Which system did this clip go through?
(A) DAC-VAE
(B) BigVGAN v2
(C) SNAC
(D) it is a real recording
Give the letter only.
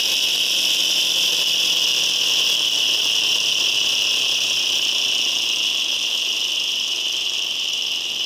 D